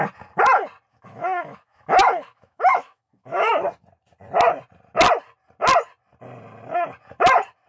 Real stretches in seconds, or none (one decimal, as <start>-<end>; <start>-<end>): 0.0-0.9; 3.5-7.7